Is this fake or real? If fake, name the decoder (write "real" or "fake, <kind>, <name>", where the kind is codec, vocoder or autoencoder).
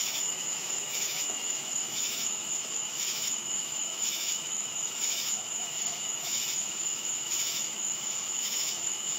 fake, autoencoder, DAC-VAE